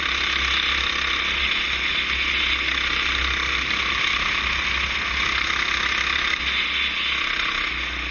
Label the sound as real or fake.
real